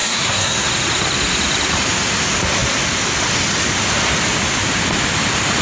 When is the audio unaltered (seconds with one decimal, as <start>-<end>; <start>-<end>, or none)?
0.7-5.6